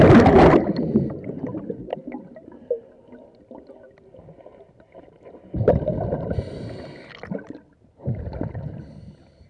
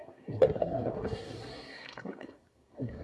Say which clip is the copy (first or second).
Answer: second